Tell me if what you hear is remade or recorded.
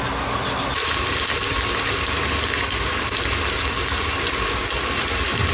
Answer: recorded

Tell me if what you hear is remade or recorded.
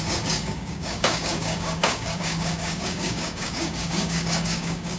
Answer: remade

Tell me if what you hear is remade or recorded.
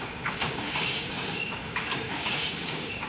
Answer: remade